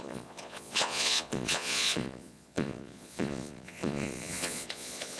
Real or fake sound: fake